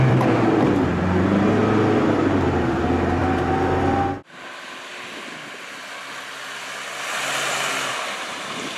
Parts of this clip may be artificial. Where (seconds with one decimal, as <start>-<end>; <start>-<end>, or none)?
0.0-1.6; 2.1-3.2; 7.9-8.8